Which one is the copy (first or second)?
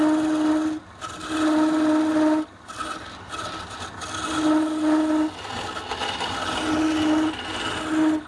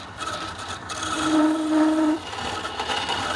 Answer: second